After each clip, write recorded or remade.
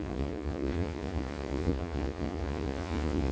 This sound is remade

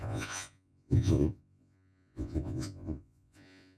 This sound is remade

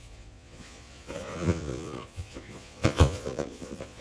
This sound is remade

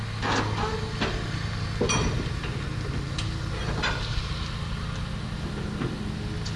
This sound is recorded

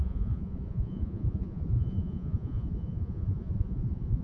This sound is remade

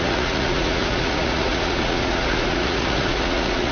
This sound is remade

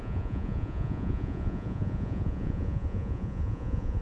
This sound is remade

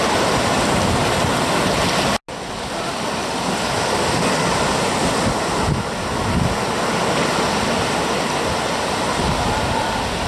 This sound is recorded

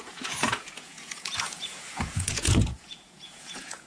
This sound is remade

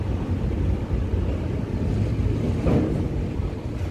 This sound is recorded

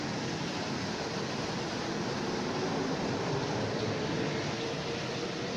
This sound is recorded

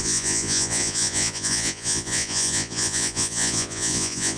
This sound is remade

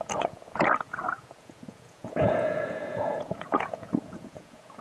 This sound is remade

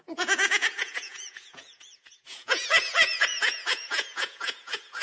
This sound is remade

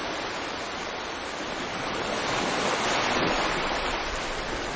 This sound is recorded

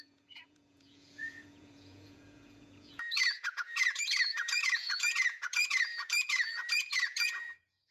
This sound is remade